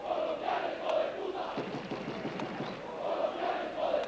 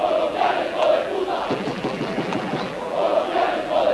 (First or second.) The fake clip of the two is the second